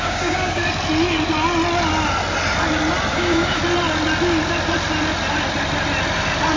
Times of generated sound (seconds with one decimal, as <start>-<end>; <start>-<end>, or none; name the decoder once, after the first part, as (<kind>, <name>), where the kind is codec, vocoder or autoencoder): 0.0-0.6 (codec, DAC); 3.1-3.6